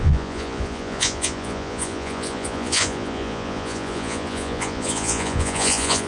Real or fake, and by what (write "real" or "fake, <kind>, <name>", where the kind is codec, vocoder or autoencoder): fake, vocoder, Vocos